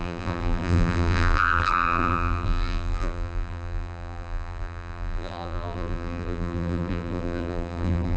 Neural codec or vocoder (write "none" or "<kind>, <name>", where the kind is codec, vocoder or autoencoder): vocoder, BigVGAN v2